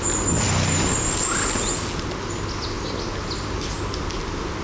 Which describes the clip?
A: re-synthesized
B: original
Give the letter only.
B